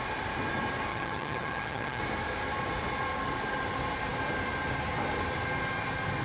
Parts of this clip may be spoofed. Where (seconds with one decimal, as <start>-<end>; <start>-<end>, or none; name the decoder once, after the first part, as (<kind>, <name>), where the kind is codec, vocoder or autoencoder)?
0.9-2.0 (vocoder, HiFi-GAN)